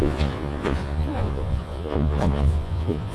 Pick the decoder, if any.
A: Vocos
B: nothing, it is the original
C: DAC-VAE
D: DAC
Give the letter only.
A